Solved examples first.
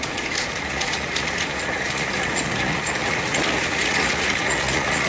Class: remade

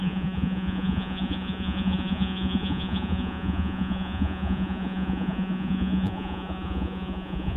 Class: remade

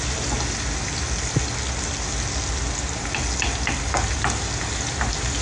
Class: recorded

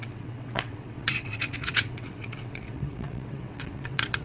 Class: remade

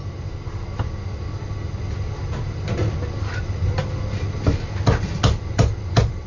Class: recorded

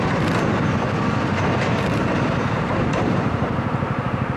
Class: recorded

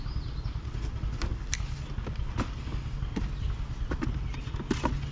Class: recorded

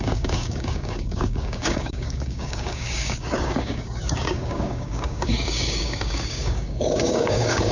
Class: remade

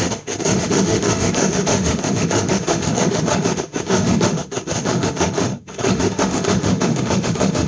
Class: remade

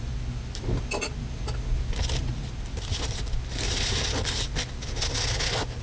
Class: recorded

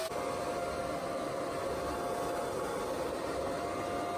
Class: recorded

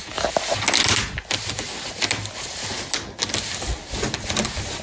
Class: recorded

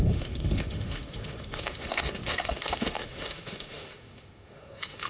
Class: remade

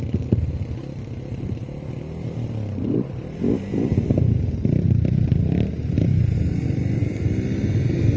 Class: recorded